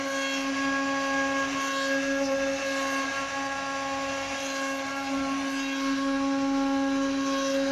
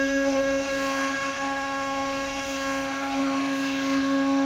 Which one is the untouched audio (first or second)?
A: first